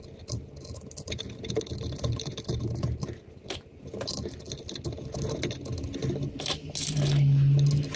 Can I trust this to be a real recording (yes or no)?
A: yes